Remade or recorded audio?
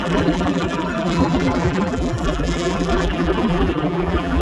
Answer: remade